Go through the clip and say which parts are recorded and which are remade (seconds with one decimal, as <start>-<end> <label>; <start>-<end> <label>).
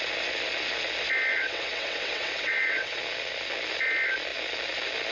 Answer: 0.0-1.3 recorded; 1.3-3.0 remade; 3.0-5.1 recorded